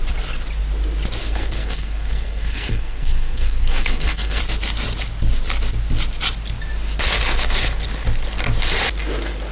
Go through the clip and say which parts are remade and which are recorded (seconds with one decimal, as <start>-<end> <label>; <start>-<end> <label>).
0.0-1.2 recorded; 1.2-4.4 remade; 4.4-9.5 recorded